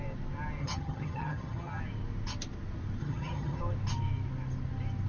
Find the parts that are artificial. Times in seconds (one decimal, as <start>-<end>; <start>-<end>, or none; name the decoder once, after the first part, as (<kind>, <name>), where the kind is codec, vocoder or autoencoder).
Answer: 0.6-1.8 (vocoder, HiFi-GAN); 3.0-3.6